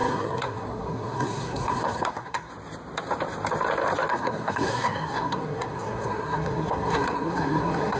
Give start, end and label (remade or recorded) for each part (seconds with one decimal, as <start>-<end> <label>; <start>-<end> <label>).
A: 0.0-2.5 remade; 2.5-4.1 recorded; 4.1-8.0 remade